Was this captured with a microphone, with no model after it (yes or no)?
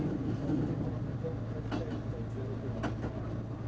yes